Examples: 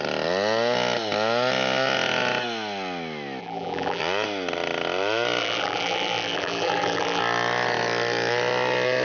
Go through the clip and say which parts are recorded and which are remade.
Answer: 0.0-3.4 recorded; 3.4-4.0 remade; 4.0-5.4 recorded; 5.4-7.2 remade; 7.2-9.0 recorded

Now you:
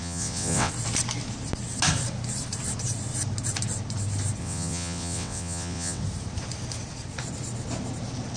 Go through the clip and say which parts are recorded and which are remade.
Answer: 0.0-0.7 remade; 0.7-4.4 recorded; 4.4-6.0 remade; 6.0-8.4 recorded

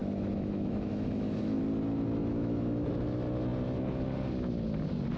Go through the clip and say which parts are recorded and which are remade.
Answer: 0.0-1.6 remade; 1.6-2.2 recorded; 2.2-2.9 remade; 2.9-5.2 recorded

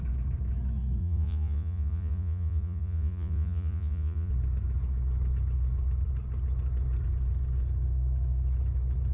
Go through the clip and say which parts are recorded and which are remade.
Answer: 0.0-1.0 recorded; 1.0-4.3 remade; 4.3-9.1 recorded

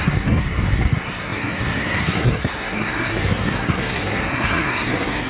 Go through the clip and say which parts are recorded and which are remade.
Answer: 0.0-5.3 remade